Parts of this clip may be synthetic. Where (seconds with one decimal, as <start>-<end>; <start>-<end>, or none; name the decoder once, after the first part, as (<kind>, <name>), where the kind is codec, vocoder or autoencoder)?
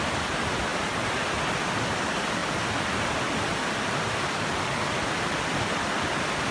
none